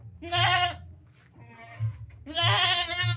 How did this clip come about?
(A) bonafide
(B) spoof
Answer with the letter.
A